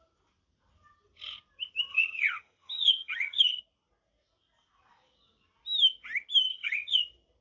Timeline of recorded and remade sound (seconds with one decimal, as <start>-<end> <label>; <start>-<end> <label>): 0.0-1.9 recorded; 1.9-3.6 remade; 3.6-6.5 recorded; 6.5-7.0 remade; 7.0-7.4 recorded